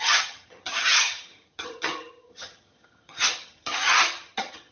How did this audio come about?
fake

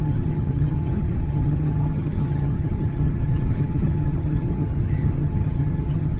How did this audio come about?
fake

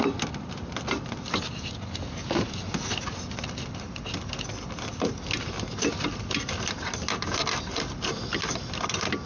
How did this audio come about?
real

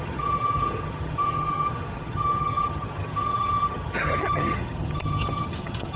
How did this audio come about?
fake